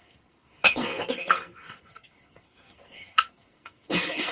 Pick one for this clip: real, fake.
fake